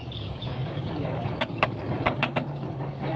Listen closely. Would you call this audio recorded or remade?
remade